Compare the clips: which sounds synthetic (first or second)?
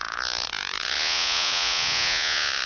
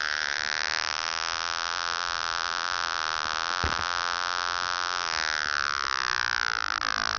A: first